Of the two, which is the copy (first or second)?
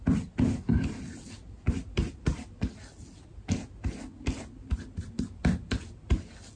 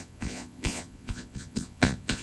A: second